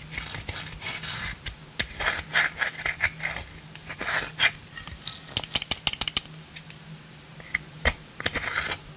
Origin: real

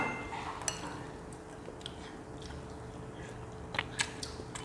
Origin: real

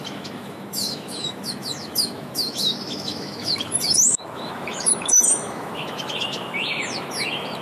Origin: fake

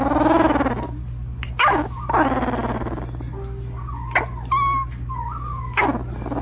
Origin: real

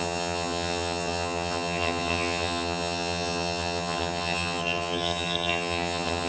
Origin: fake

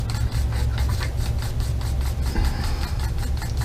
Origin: real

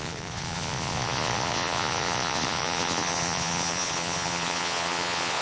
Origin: fake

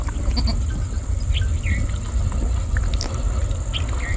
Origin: real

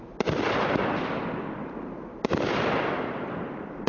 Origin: real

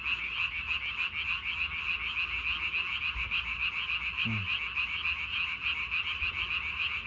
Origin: real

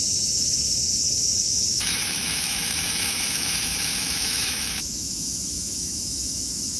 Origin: fake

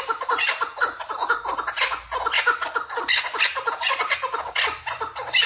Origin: real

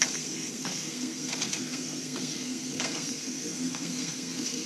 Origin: fake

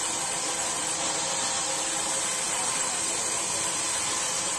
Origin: real